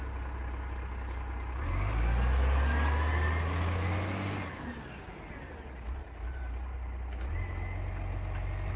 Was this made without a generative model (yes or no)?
yes